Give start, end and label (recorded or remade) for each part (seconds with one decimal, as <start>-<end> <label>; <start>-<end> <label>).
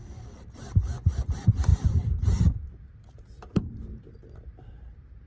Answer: 0.0-5.3 remade